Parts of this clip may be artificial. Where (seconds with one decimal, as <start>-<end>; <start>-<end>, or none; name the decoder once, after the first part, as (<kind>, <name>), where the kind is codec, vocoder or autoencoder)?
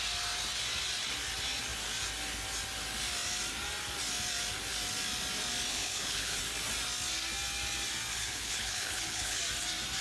5.7-6.4 (codec, HILCodec); 8.1-9.4